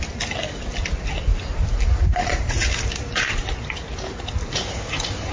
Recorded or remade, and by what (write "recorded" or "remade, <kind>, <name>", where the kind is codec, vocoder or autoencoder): recorded